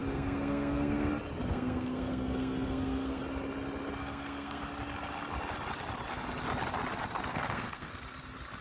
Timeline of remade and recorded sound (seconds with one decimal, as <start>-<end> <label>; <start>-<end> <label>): 0.0-1.1 remade; 1.1-1.5 recorded; 1.5-3.2 remade; 3.2-4.0 recorded; 4.0-4.6 remade; 4.6-7.3 recorded; 7.3-7.9 remade; 7.9-8.6 recorded

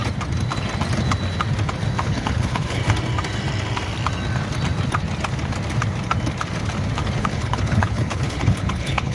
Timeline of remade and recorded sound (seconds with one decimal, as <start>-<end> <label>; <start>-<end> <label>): 0.0-2.1 recorded; 2.1-2.8 remade; 2.8-7.2 recorded; 7.2-9.1 remade

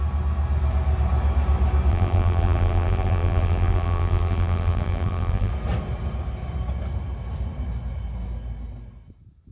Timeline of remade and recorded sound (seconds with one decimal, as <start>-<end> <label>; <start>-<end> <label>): 0.0-1.9 recorded; 1.9-5.5 remade; 5.5-9.5 recorded

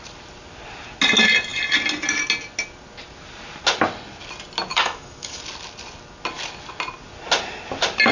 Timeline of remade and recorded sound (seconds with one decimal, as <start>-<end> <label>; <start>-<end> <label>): 0.0-4.7 recorded; 4.7-5.4 remade; 5.4-8.1 recorded

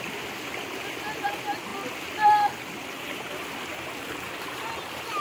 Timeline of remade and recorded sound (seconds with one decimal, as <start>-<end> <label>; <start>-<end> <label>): 0.0-5.2 recorded

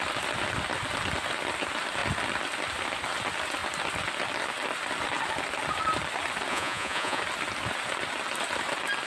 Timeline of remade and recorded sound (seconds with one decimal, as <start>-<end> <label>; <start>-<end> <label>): 0.0-6.5 recorded; 6.5-7.2 remade; 7.2-9.1 recorded

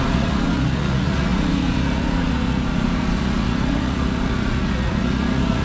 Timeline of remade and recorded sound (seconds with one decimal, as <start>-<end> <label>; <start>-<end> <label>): 0.0-5.6 remade